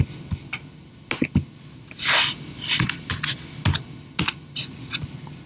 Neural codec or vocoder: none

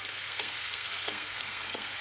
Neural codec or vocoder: codec, SNAC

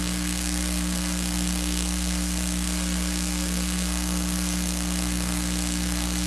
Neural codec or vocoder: codec, SNAC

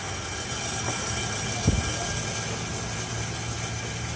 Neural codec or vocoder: none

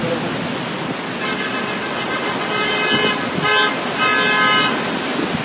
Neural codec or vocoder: none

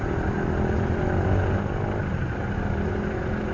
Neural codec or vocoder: none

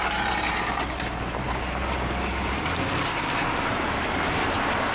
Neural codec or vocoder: none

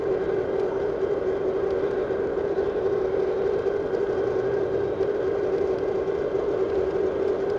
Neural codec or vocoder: none